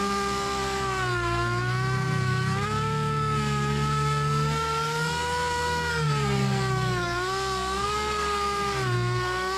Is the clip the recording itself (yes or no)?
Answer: no